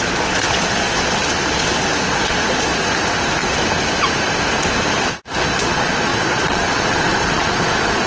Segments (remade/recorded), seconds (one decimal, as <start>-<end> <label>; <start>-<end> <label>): 0.0-1.2 remade; 1.2-2.0 recorded; 2.0-2.7 remade; 2.7-5.6 recorded; 5.6-8.1 remade